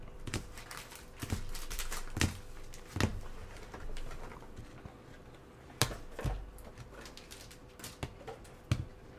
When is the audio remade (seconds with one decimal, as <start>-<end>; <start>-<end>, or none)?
none